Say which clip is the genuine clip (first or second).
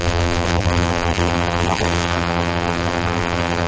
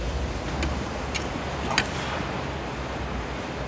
second